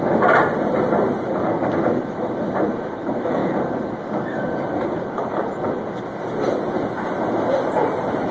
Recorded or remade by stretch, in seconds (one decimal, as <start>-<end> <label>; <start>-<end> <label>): 0.0-8.3 recorded